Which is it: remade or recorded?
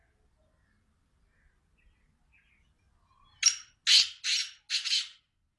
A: recorded